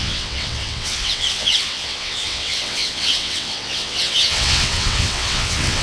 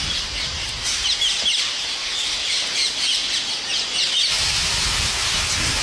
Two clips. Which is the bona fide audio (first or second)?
second